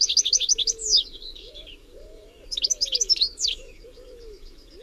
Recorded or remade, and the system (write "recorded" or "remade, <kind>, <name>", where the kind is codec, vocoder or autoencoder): remade, codec, DAC